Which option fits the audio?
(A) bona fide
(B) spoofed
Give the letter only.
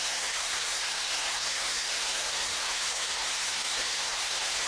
B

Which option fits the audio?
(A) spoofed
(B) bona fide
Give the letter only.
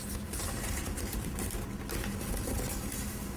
B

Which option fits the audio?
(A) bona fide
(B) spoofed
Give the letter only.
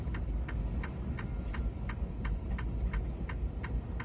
A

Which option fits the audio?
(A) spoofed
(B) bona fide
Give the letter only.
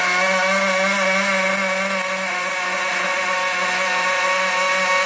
B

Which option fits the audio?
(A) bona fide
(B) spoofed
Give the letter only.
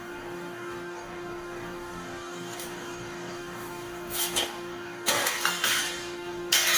B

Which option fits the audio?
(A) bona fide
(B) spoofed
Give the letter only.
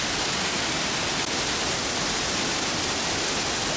A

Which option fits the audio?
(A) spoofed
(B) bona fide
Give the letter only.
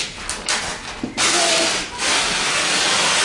B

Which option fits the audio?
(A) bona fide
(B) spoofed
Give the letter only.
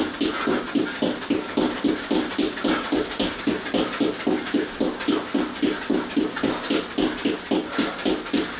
A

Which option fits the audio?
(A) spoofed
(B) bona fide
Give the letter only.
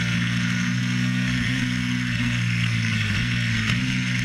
A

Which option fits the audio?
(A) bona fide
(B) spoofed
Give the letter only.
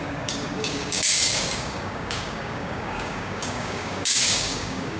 B